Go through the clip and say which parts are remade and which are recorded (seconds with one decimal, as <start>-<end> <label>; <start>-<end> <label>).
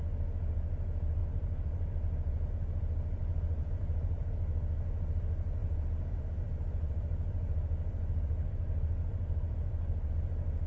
0.0-1.2 recorded; 1.2-2.5 remade; 2.5-3.2 recorded; 3.2-4.2 remade; 4.2-5.6 recorded; 5.6-10.1 remade; 10.1-10.7 recorded